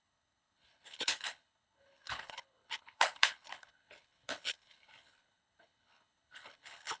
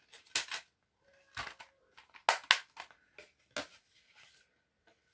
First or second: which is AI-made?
first